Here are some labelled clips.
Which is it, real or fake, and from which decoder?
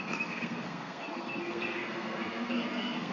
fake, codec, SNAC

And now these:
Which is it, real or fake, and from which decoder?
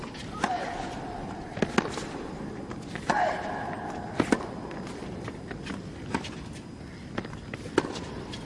real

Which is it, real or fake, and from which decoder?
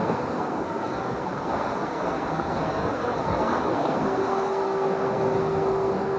fake, codec, SNAC